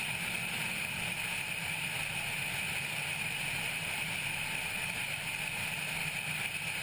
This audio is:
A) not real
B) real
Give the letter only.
A